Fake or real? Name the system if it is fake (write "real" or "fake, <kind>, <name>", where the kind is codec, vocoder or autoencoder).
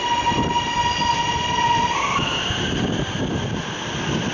real